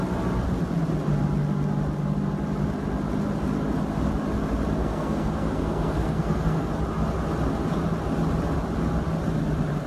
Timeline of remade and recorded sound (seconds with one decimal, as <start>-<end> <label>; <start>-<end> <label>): 0.0-4.8 recorded; 4.8-6.7 remade; 6.7-9.9 recorded